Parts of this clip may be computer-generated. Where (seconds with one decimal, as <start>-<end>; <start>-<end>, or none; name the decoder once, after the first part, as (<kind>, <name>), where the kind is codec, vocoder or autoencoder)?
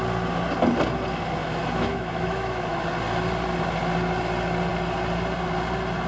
1.4-2.8 (autoencoder, DAC-VAE)